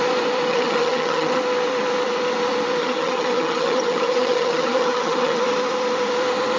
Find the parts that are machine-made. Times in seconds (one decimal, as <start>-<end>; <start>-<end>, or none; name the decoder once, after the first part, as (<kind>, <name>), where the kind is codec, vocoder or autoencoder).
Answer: 0.5-1.4 (vocoder, HiFi-GAN); 2.8-5.4